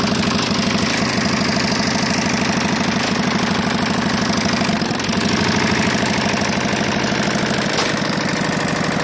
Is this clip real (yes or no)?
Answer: yes